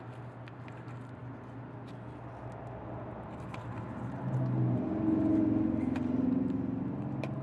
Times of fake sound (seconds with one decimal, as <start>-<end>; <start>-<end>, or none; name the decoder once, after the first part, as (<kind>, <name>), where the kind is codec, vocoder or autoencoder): none